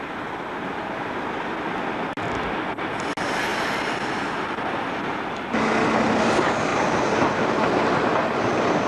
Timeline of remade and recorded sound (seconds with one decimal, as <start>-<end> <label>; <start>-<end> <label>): 0.0-6.7 recorded; 6.7-7.7 remade; 7.7-8.9 recorded